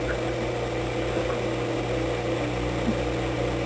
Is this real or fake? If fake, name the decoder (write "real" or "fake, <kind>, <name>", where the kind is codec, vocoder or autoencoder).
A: real